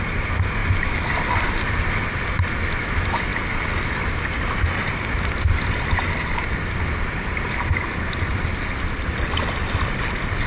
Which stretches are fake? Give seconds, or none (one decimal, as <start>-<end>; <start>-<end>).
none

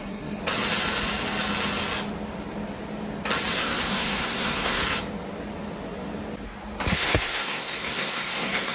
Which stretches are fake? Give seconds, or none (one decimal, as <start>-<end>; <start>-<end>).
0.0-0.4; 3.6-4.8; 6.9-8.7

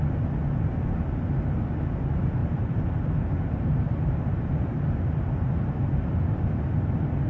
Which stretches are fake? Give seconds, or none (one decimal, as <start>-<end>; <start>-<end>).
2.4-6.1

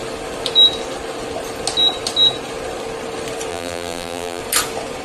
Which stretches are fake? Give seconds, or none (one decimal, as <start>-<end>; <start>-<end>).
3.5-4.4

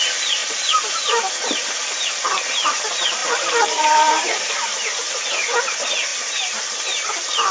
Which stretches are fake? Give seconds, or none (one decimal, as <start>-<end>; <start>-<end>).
0.4-2.2; 3.2-4.5; 6.1-7.5

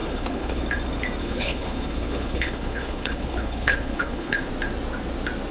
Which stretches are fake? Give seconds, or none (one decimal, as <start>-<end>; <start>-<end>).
0.0-0.6; 1.2-4.5